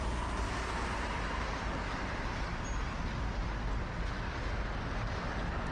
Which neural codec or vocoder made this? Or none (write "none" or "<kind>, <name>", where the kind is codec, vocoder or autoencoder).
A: none